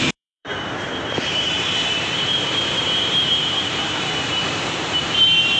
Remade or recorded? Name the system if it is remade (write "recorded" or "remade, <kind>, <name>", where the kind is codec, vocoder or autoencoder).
remade, vocoder, BigVGAN v2